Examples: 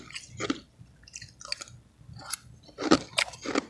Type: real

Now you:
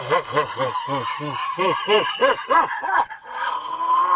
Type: fake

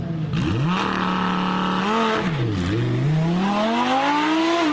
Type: real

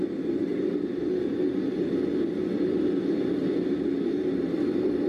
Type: real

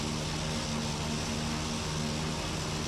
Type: real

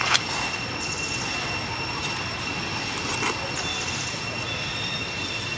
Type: real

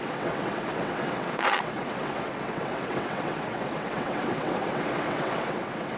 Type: fake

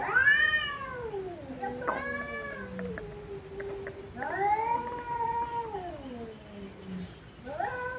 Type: real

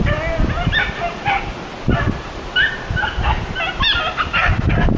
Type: real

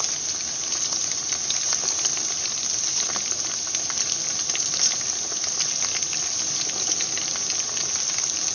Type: real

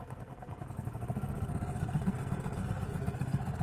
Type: fake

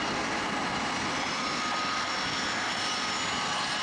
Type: real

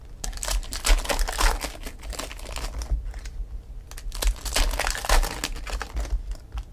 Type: real